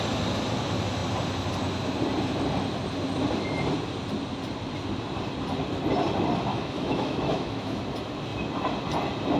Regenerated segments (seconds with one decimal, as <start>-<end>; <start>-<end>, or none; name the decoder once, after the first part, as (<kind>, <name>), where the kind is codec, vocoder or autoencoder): 6.5-7.8 (autoencoder, DAC-VAE)